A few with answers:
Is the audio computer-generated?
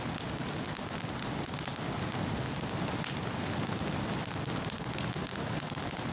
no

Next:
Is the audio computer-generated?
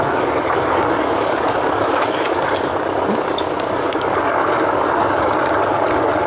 yes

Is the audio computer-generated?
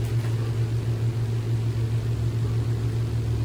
no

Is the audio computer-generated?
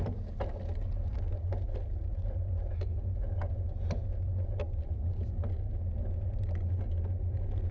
no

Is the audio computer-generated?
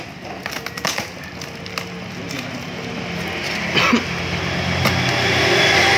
no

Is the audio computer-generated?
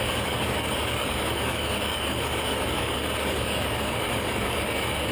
yes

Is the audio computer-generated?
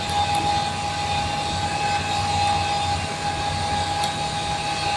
no